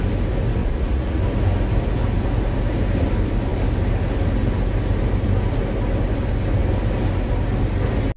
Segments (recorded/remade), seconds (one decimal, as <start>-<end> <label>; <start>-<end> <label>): 0.0-0.6 recorded; 0.6-1.2 remade; 1.2-8.2 recorded